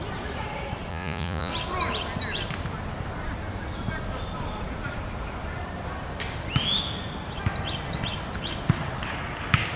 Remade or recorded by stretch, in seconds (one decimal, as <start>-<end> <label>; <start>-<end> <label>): 0.0-0.9 recorded; 0.9-1.5 remade; 1.5-9.8 recorded